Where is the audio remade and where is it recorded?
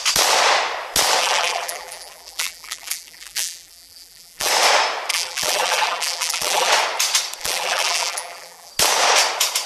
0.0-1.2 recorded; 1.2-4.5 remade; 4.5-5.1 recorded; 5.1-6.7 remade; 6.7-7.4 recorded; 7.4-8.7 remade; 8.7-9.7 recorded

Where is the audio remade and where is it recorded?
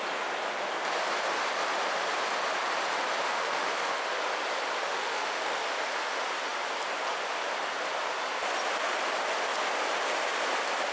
0.0-3.3 recorded; 3.3-3.9 remade; 3.9-4.8 recorded; 4.8-5.6 remade; 5.6-10.9 recorded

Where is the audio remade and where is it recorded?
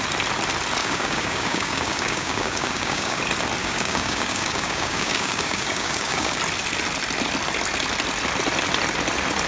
0.0-0.8 recorded; 0.8-3.2 remade; 3.2-3.6 recorded; 3.6-6.4 remade; 6.4-9.5 recorded